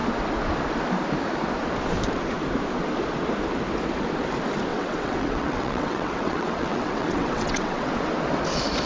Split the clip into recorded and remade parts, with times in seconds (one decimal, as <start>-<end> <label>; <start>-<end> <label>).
0.0-4.7 recorded; 4.7-7.9 remade; 7.9-8.9 recorded